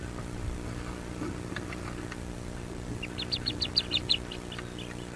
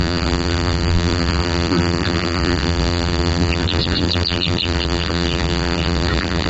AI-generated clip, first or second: second